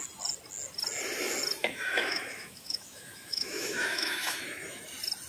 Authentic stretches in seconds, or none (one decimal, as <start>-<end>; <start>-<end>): 0.0-1.6; 4.8-5.3